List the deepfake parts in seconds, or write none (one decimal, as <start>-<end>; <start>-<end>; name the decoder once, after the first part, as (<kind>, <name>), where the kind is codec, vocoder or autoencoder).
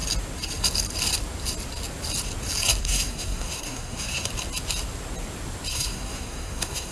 2.8-4.3 (codec, SNAC); 5.7-6.9